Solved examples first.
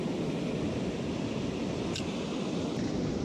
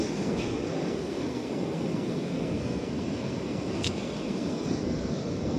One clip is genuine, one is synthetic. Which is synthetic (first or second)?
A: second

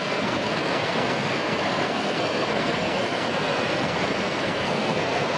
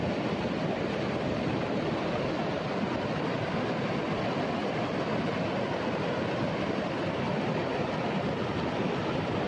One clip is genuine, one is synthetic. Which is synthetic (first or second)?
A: first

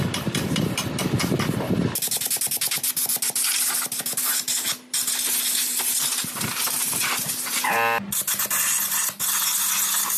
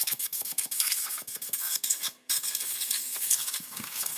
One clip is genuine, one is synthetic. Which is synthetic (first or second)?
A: second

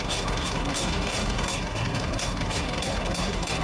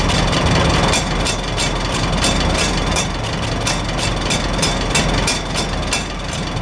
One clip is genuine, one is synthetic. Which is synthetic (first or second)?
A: first